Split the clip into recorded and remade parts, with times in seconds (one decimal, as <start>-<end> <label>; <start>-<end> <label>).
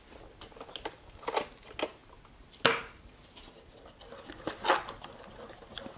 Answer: 0.0-6.0 recorded